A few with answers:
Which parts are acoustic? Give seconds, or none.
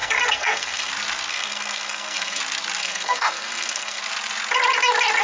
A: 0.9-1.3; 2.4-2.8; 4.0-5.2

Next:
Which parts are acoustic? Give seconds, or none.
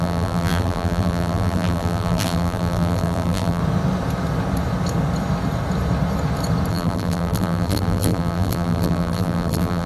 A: 3.6-6.7